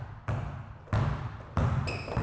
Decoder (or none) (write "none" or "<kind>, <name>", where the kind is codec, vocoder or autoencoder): none